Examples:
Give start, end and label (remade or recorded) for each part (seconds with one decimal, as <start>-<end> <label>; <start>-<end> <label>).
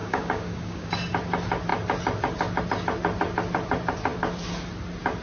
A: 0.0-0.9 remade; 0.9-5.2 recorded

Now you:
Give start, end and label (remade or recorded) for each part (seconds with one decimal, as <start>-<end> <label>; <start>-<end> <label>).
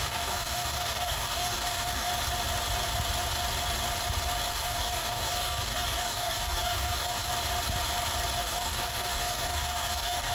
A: 0.0-2.1 remade; 2.1-4.5 recorded; 4.5-7.3 remade; 7.3-8.4 recorded; 8.4-10.3 remade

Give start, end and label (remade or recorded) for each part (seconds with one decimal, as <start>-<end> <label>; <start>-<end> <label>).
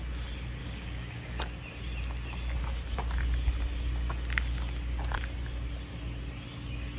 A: 0.0-0.6 recorded; 0.6-1.4 remade; 1.4-7.0 recorded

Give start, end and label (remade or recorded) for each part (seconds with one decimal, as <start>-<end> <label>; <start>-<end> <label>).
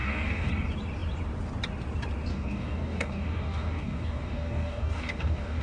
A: 0.0-0.5 remade; 0.5-2.3 recorded; 2.3-5.6 remade